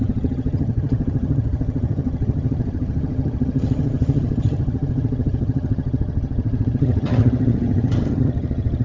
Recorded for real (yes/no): no